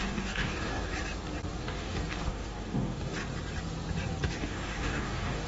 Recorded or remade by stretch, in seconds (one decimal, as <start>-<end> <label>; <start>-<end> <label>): 0.0-0.9 remade; 0.9-1.6 recorded; 1.6-3.2 remade; 3.2-4.4 recorded; 4.4-5.5 remade